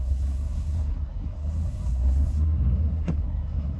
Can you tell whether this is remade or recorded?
remade